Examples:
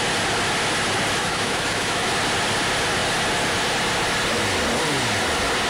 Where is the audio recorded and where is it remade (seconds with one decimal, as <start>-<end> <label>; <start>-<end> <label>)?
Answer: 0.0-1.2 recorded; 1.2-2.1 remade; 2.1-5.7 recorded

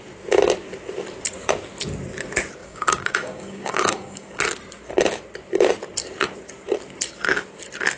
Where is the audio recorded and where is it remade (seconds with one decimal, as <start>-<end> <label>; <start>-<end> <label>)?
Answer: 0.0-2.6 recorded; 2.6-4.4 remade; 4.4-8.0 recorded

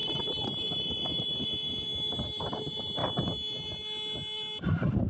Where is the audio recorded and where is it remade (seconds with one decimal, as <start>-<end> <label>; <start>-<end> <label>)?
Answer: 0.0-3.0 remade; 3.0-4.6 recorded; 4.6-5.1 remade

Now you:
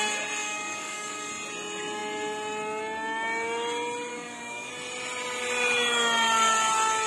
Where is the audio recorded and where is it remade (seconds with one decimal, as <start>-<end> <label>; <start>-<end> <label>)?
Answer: 0.0-0.4 recorded; 0.4-1.3 remade; 1.3-4.1 recorded; 4.1-4.7 remade; 4.7-7.1 recorded